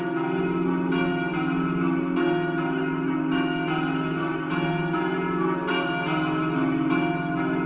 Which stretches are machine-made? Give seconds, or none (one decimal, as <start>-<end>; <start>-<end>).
none